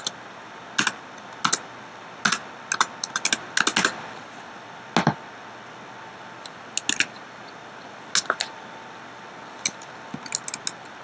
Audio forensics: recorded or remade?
recorded